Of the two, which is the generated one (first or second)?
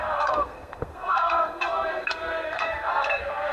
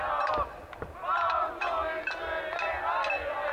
first